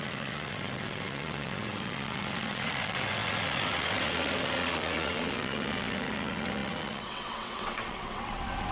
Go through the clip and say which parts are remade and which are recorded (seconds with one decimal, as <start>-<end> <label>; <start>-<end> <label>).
0.0-8.7 remade